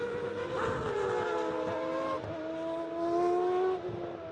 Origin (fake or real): real